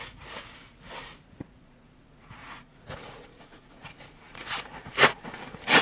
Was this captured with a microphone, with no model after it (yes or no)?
no